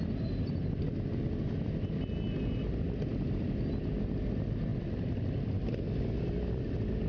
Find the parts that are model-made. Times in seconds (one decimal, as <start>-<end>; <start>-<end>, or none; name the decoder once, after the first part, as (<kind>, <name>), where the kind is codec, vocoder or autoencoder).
none